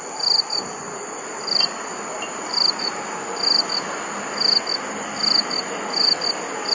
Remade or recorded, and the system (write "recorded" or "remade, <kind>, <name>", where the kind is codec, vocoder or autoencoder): recorded